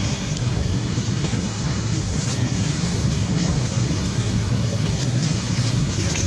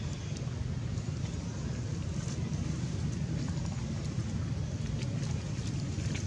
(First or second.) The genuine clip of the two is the second